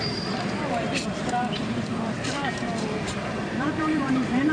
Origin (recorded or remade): remade